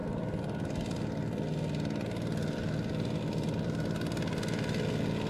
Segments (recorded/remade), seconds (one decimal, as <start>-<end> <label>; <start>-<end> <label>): 0.0-5.3 recorded